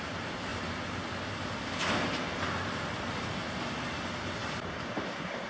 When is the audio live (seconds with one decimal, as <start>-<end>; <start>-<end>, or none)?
0.0-4.4